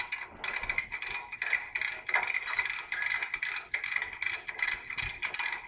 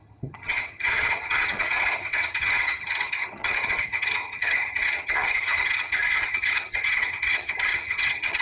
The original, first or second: first